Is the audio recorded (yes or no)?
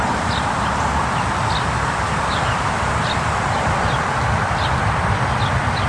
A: no